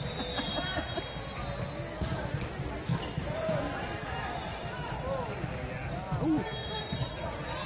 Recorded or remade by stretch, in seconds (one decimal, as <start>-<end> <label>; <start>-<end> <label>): 0.0-2.9 recorded; 2.9-4.8 remade; 4.8-6.6 recorded; 6.6-7.3 remade; 7.3-7.7 recorded